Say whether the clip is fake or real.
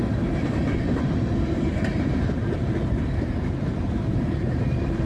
fake